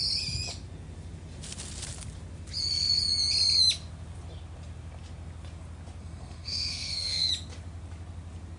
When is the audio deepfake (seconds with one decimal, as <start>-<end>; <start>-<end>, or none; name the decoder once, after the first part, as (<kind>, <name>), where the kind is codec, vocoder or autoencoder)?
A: 6.0-7.3 (codec, SNAC)